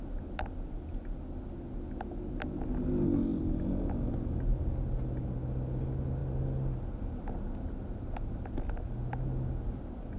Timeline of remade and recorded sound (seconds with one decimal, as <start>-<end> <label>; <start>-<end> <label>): 0.0-10.2 recorded